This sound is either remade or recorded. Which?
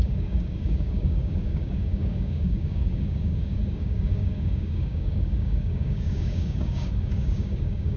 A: remade